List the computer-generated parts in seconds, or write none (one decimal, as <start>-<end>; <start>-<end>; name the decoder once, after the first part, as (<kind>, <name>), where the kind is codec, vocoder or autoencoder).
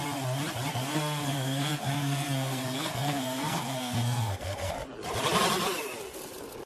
0.7-4.7 (codec, SNAC)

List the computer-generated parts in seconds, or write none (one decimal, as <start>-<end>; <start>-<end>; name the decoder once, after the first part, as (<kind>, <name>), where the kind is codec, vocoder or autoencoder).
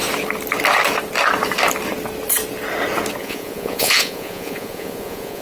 3.2-5.4 (vocoder, Vocos)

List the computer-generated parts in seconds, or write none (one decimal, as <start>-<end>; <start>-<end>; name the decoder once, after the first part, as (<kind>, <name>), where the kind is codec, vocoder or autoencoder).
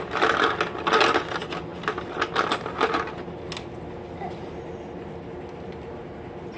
none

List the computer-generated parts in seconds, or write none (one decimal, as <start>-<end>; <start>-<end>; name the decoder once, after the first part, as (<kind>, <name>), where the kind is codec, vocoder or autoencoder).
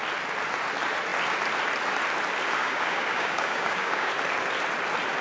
2.6-4.1 (codec, DAC)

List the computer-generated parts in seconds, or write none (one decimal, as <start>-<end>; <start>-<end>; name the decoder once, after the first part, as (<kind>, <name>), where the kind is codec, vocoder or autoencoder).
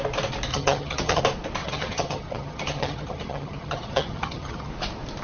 0.5-1.2 (vocoder, HiFi-GAN); 1.6-4.7